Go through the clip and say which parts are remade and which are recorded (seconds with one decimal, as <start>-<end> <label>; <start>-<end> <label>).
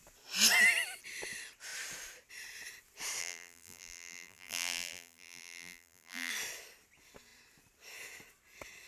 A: 0.0-3.2 recorded; 3.2-6.3 remade; 6.3-8.9 recorded